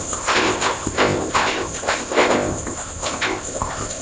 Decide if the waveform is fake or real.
fake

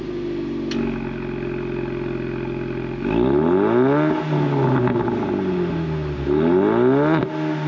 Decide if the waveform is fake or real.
real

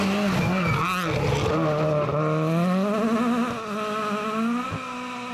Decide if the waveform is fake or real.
real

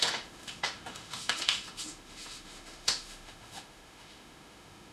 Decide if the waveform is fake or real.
fake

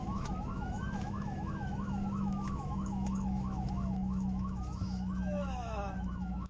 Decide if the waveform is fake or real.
fake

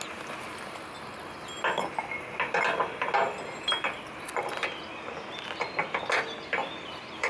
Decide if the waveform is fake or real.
real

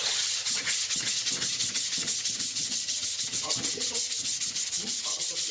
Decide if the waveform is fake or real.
fake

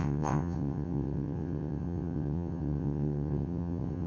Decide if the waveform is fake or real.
fake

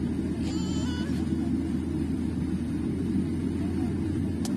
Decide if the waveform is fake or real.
real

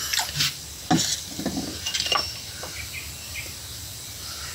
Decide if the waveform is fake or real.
real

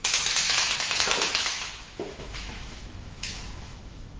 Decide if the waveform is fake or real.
fake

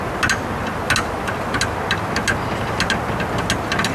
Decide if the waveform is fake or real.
real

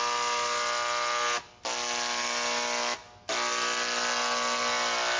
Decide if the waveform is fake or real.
real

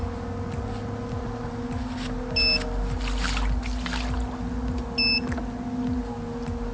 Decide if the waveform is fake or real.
real